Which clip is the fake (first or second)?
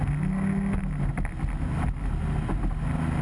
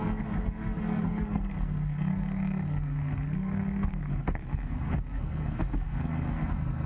second